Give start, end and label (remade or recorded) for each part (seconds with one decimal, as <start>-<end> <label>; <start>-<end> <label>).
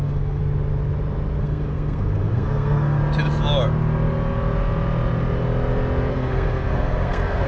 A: 0.0-0.4 remade; 0.4-1.4 recorded; 1.4-3.0 remade; 3.0-6.1 recorded; 6.1-7.5 remade